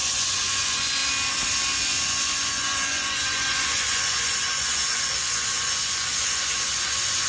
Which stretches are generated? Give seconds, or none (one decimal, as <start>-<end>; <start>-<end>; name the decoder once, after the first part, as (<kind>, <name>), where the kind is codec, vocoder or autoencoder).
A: 0.0-1.0 (vocoder, Vocos); 1.8-7.3